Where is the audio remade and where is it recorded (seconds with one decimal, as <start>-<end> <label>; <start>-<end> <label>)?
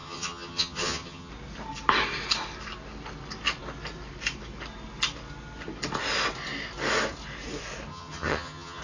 0.0-1.3 remade; 1.3-7.9 recorded; 7.9-8.8 remade